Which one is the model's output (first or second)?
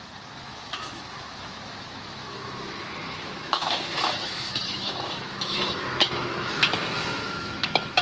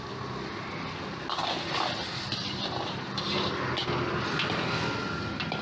first